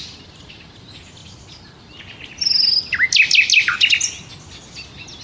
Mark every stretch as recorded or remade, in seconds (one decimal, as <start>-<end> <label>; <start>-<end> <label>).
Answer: 0.0-5.2 recorded